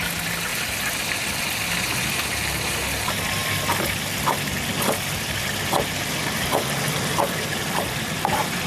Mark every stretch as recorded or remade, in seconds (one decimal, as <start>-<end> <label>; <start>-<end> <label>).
0.0-8.7 recorded